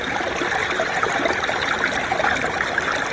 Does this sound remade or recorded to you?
remade